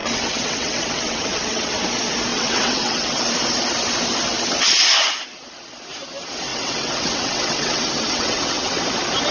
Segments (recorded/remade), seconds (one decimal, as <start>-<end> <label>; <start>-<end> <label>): 0.0-1.7 remade; 1.7-2.3 recorded; 2.3-3.2 remade; 3.2-6.5 recorded; 6.5-8.8 remade; 8.8-9.3 recorded